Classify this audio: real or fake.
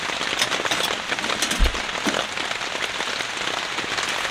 real